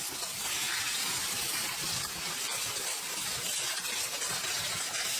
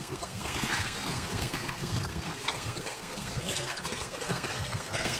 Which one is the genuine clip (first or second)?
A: first